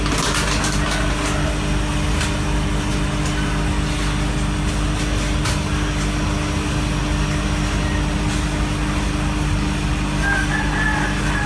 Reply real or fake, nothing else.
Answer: real